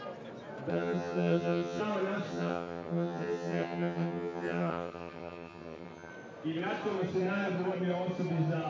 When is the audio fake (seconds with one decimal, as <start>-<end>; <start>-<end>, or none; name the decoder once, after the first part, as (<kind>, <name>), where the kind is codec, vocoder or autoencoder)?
0.7-1.8 (vocoder, HiFi-GAN); 2.3-6.1